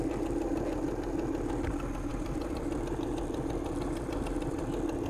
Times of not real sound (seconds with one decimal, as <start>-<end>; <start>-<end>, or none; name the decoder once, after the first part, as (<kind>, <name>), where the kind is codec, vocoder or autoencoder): 2.1-4.6 (vocoder, BigVGAN v2)